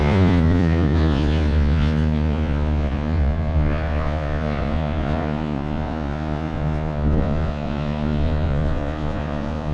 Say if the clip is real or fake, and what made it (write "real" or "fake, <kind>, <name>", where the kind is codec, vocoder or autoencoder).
fake, vocoder, Vocos